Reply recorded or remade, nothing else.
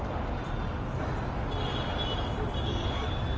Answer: recorded